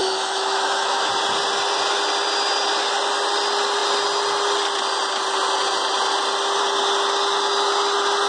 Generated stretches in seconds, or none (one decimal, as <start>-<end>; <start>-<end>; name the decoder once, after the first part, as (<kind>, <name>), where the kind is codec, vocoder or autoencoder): 0.0-1.1 (autoencoder, DAC-VAE)